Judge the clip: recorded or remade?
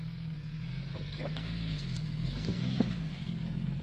remade